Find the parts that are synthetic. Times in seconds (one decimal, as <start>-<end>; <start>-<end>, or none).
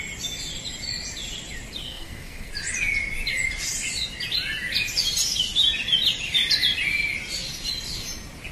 1.8-2.5